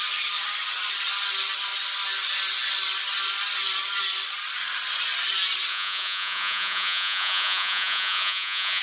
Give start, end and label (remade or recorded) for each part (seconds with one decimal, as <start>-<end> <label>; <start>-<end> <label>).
0.0-5.7 recorded; 5.7-8.8 remade